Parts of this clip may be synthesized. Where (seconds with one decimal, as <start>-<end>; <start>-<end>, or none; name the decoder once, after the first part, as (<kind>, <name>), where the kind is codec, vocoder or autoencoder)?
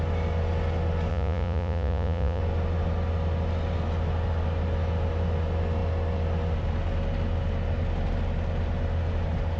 1.1-2.4 (vocoder, Vocos)